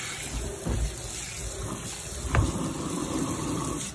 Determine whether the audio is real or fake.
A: real